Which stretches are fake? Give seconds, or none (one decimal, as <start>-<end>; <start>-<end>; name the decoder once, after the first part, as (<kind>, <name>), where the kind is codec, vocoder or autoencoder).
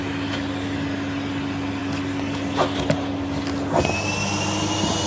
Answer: none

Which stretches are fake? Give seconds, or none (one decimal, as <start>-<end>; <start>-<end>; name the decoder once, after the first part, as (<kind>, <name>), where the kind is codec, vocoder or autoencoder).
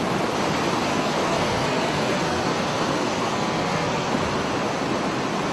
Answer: 0.9-4.1 (codec, SNAC)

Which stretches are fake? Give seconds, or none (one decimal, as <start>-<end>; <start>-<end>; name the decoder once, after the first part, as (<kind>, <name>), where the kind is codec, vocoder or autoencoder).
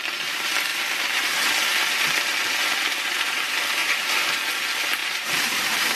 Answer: 0.7-1.5 (vocoder, BigVGAN v2); 3.8-4.4; 5.0-6.0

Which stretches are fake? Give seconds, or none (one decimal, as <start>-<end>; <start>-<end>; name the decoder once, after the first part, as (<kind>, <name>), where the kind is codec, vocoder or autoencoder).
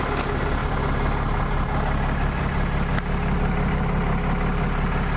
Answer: none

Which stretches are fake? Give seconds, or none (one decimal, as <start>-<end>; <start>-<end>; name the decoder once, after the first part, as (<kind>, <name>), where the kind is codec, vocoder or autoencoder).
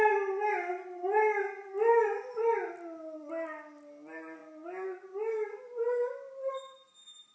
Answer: none